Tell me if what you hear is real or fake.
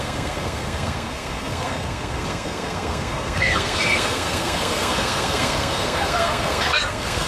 fake